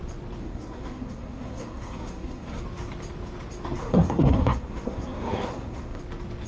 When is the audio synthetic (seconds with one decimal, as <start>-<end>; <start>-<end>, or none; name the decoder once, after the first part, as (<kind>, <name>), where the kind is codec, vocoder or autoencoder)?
0.4-2.6 (codec, SNAC); 3.8-6.0